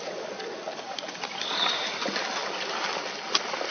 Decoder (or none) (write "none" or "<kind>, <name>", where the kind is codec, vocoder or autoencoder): none